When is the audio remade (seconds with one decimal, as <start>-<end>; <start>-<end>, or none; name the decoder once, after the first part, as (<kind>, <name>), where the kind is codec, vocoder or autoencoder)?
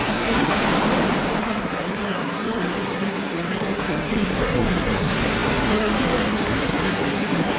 0.0-0.6 (codec, SNAC); 1.4-7.6